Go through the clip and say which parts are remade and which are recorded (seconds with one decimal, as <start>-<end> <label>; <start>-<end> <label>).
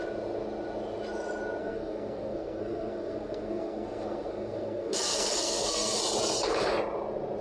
0.0-1.6 recorded; 1.6-6.0 remade; 6.0-7.4 recorded